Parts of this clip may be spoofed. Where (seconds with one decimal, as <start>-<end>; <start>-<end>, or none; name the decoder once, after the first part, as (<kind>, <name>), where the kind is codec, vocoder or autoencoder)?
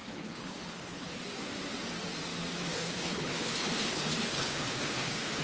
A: 0.0-1.2 (codec, HILCodec); 2.6-5.4